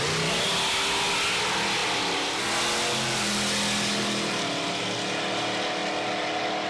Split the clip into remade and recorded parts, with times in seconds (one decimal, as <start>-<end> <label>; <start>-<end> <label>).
0.0-6.7 recorded